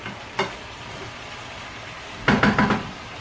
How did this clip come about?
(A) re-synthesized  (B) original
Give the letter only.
B